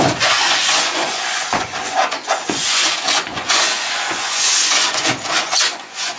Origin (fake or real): fake